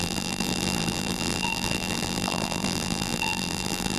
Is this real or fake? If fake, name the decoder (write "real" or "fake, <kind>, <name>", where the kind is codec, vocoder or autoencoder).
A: fake, vocoder, BigVGAN v2